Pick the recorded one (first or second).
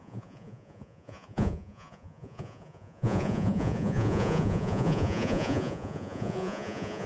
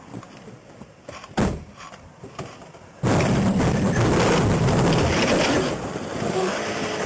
second